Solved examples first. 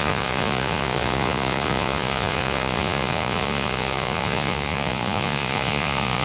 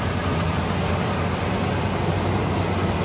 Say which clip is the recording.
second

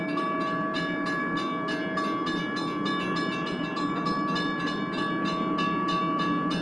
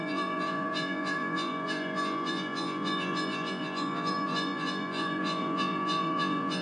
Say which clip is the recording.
first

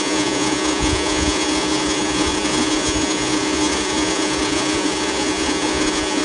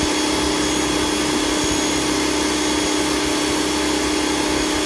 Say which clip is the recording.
second